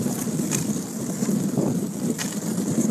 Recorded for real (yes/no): yes